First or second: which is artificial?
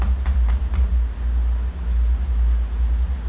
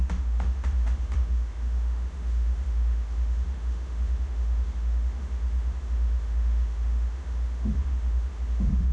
second